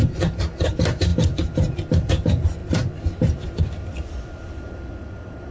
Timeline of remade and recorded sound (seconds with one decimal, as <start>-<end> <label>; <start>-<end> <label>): 0.0-1.1 remade; 1.1-2.1 recorded; 2.1-2.6 remade; 2.6-3.7 recorded; 3.7-5.5 remade